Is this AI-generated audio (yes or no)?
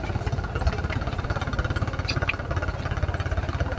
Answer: no